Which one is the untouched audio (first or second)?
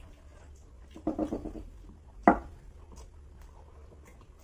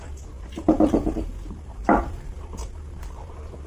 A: first